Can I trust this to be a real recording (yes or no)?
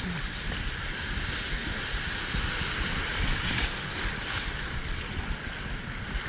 yes